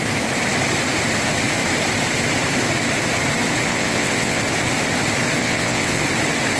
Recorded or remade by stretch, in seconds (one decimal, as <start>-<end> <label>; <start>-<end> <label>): 0.0-3.7 recorded; 3.7-4.4 remade; 4.4-5.4 recorded; 5.4-6.0 remade; 6.0-6.6 recorded

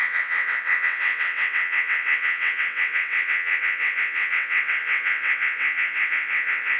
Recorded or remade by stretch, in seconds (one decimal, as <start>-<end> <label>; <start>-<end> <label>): 0.0-6.8 remade

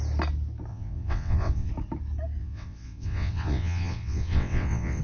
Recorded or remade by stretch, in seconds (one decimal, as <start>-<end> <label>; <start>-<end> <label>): 0.0-0.7 recorded; 0.7-1.7 remade; 1.7-2.4 recorded; 2.4-5.0 remade

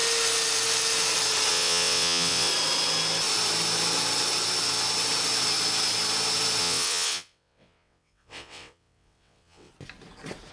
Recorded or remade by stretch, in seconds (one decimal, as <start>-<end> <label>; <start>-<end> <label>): 0.0-1.5 recorded; 1.5-2.5 remade; 2.5-6.6 recorded; 6.6-9.7 remade; 9.7-10.5 recorded

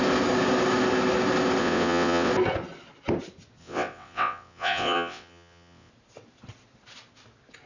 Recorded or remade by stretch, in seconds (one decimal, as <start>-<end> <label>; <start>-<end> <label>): 0.0-1.6 recorded; 1.6-2.3 remade; 2.3-3.6 recorded; 3.6-5.9 remade; 5.9-7.7 recorded

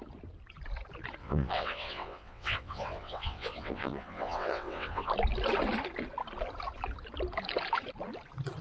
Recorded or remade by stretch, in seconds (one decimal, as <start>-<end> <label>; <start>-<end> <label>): 0.0-1.2 recorded; 1.2-5.1 remade; 5.1-8.6 recorded

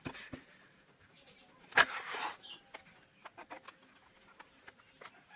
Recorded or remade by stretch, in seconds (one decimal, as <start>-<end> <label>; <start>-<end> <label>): 0.0-5.4 recorded